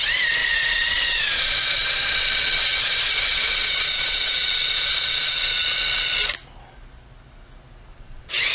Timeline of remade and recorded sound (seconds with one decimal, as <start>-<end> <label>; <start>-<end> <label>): 0.0-0.4 recorded; 0.4-5.5 remade; 5.5-7.9 recorded; 7.9-8.5 remade